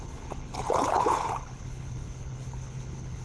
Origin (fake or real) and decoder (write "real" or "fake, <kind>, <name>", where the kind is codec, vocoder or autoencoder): fake, codec, HILCodec